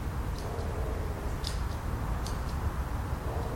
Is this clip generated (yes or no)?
no